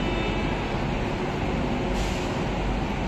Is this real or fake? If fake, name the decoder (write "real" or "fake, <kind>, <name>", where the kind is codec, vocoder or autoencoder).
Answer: real